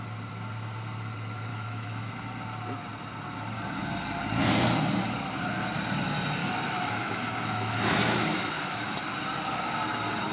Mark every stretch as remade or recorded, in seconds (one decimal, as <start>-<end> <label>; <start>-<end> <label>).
0.0-1.5 recorded; 1.5-2.1 remade; 2.1-6.4 recorded; 6.4-9.0 remade; 9.0-10.3 recorded